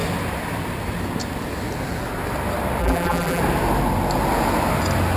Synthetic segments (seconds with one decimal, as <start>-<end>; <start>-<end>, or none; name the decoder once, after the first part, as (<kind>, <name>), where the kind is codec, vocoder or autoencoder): 2.8-3.4 (vocoder, BigVGAN v2)